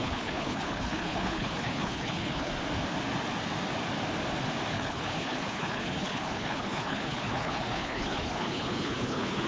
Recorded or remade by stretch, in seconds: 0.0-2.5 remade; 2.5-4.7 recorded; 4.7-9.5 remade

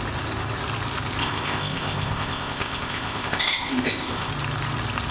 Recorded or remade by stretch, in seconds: 0.0-1.2 recorded; 1.2-4.3 remade; 4.3-5.1 recorded

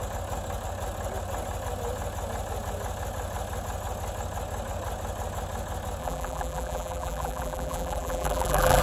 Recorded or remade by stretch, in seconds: 0.0-6.0 recorded; 6.0-8.8 remade

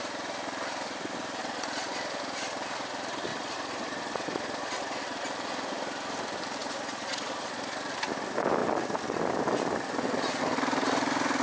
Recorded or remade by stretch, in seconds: 0.0-1.4 recorded; 1.4-2.0 remade; 2.0-3.3 recorded; 3.3-5.0 remade; 5.0-6.6 recorded; 6.6-7.8 remade; 7.8-11.4 recorded

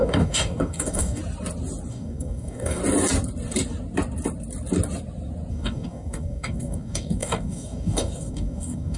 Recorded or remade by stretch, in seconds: 0.0-1.2 remade; 1.2-1.9 recorded; 1.9-2.8 remade; 2.8-5.5 recorded; 5.5-9.0 remade